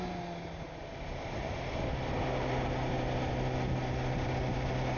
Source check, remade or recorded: recorded